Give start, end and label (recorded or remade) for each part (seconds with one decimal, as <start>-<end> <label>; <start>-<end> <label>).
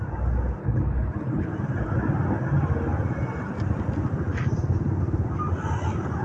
0.0-0.6 recorded; 0.6-1.5 remade; 1.5-6.2 recorded